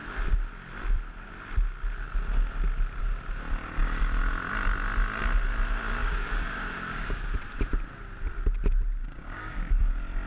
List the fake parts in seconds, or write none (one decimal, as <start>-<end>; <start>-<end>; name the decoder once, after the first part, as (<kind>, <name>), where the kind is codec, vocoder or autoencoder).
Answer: 6.0-7.3 (codec, DAC); 9.0-9.7